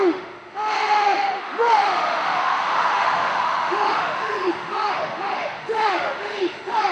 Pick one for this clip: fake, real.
fake